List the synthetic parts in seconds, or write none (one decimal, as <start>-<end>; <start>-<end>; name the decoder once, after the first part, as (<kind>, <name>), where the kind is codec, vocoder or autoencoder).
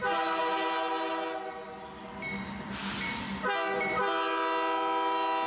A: none